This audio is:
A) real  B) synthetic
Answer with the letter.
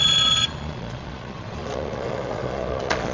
B